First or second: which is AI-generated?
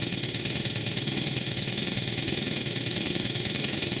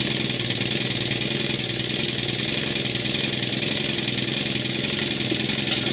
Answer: first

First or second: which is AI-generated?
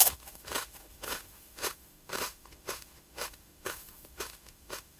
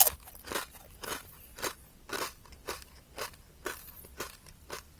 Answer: first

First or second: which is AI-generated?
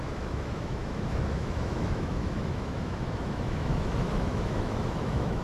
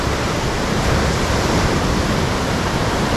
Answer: first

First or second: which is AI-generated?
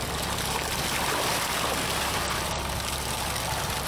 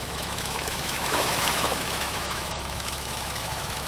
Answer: second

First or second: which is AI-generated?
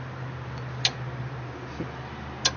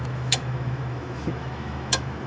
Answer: second